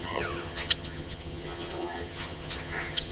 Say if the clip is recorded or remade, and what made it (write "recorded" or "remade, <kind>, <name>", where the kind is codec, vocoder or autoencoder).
remade, vocoder, HiFi-GAN